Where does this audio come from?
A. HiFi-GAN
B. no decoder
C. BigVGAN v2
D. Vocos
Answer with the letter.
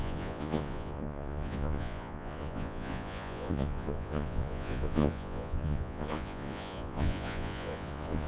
D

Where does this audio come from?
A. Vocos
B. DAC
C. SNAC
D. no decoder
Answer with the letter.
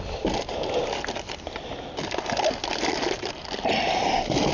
D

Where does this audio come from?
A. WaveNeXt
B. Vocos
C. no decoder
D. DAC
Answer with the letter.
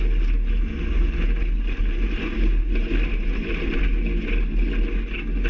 C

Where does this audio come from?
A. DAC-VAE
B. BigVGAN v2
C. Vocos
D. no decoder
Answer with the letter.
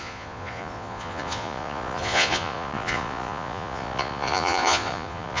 C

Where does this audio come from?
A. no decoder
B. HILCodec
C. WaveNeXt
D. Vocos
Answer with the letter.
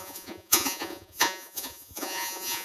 D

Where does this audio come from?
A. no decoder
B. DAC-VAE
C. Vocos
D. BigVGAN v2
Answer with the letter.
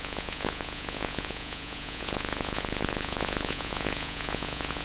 C